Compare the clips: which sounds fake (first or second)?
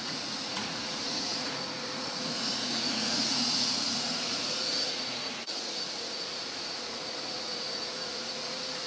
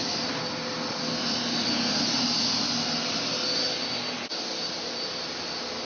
first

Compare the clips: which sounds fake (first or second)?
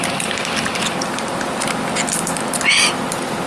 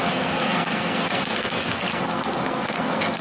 second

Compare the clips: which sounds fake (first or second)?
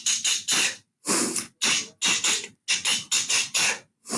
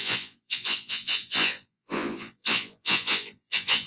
second